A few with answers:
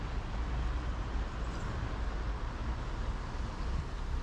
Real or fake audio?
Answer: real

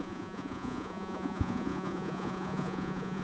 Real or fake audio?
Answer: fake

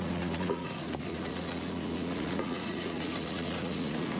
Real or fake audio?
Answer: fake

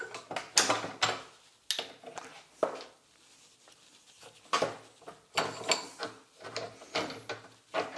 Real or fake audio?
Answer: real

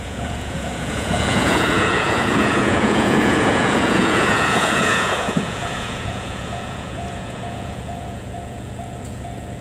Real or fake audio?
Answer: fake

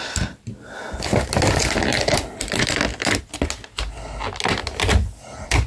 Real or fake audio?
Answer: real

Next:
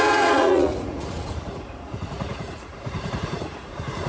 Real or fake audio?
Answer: fake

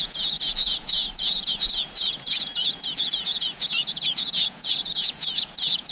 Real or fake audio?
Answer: fake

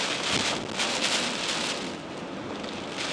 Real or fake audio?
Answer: real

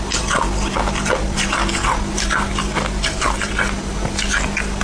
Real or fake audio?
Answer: real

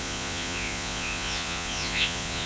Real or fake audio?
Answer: fake